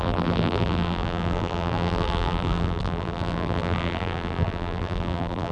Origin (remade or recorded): remade